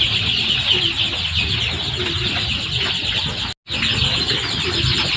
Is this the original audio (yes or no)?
yes